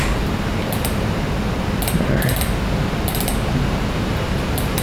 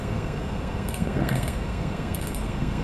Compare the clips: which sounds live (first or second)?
first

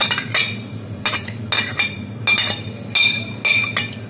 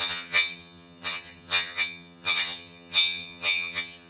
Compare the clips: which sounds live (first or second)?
first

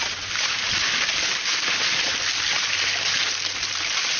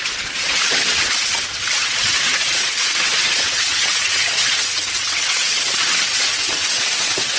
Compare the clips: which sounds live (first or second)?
first